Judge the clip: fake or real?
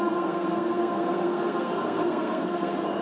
fake